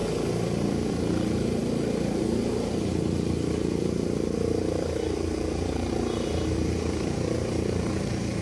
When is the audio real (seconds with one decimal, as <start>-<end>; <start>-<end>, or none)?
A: 0.0-1.1